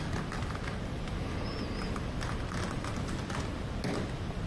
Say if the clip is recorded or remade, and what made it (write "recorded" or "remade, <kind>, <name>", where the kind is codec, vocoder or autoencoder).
recorded